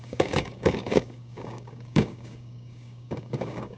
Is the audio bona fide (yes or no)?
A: no